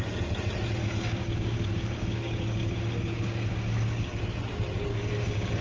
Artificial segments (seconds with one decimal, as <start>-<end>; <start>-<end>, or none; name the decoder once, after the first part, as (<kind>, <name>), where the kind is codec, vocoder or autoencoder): 0.8-4.2 (codec, DAC); 4.9-5.6